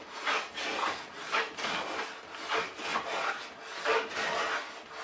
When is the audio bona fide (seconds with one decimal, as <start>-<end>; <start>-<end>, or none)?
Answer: 0.0-5.0